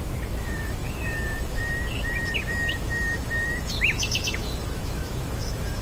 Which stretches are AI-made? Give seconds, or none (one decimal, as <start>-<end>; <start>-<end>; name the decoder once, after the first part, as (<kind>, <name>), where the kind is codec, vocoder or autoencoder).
0.0-5.8 (autoencoder, DAC-VAE)